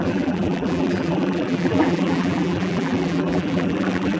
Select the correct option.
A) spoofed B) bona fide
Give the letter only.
A